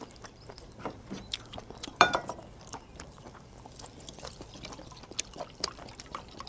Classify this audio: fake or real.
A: fake